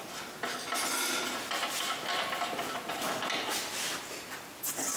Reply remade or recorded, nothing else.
recorded